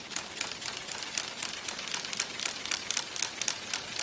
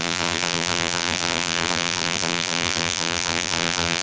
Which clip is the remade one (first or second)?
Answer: second